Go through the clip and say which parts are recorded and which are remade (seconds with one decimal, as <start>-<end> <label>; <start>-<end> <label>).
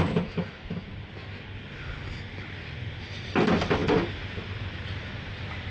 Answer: 0.0-5.7 recorded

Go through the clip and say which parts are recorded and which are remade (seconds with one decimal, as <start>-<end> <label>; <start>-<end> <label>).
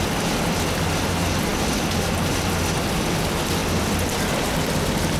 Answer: 0.0-5.2 recorded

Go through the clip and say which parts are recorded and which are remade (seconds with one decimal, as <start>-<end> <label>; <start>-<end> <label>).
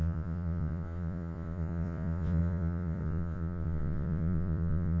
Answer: 0.0-5.0 remade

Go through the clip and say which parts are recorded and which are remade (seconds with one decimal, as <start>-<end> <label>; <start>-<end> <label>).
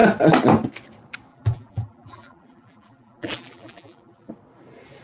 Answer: 0.0-1.3 recorded; 1.3-4.3 remade; 4.3-5.0 recorded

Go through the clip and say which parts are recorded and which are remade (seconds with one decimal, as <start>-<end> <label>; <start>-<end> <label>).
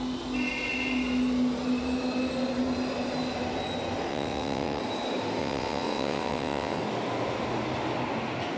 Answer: 0.0-4.1 recorded; 4.1-4.8 remade; 4.8-5.4 recorded; 5.4-6.8 remade; 6.8-8.6 recorded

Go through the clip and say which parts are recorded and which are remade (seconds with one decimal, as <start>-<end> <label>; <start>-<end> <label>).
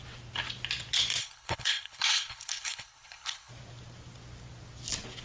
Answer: 0.0-1.2 recorded; 1.2-3.5 remade; 3.5-5.2 recorded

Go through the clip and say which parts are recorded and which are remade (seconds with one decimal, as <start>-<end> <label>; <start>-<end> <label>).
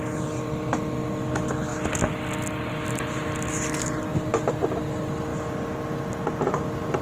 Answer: 0.0-1.7 remade; 1.7-2.7 recorded; 2.7-5.3 remade; 5.3-7.0 recorded